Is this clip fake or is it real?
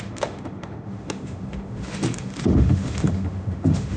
fake